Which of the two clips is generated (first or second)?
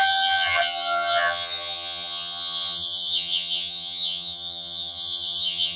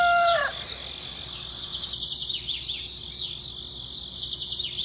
first